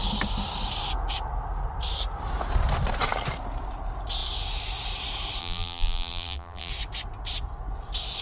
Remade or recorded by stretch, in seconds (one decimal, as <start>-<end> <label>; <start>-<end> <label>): 0.0-5.4 recorded; 5.4-6.7 remade; 6.7-8.2 recorded